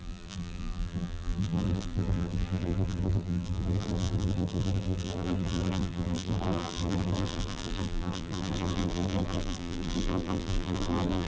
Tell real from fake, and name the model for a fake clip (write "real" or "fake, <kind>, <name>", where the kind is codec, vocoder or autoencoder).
fake, vocoder, BigVGAN v2